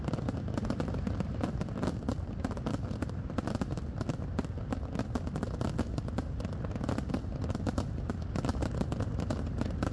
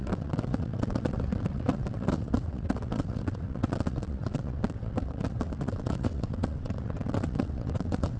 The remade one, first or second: second